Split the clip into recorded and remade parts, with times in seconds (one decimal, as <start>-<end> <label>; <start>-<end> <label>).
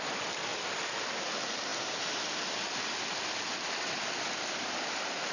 0.0-5.3 recorded